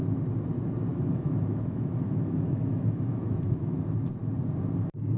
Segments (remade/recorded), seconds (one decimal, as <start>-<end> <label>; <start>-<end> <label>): 0.0-0.9 recorded; 0.9-3.8 remade; 3.8-5.2 recorded